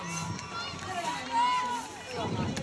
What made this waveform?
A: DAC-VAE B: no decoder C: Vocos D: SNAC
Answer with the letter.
B